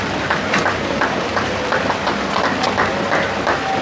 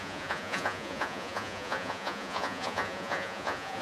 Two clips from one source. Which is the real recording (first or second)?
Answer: first